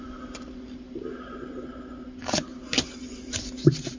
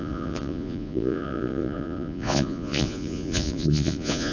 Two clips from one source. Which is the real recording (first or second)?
first